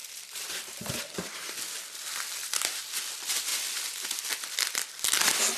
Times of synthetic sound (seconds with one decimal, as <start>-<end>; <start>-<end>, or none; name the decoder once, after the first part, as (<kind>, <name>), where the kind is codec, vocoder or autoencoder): 0.0-2.1 (vocoder, BigVGAN v2); 3.5-4.3